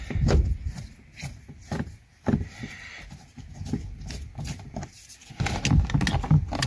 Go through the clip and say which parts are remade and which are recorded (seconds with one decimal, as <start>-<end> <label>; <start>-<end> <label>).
0.0-6.7 recorded